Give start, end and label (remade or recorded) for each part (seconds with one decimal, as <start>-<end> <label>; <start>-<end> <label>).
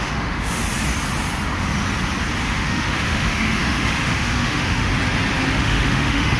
0.0-0.6 remade; 0.6-2.4 recorded; 2.4-4.9 remade; 4.9-5.5 recorded; 5.5-6.4 remade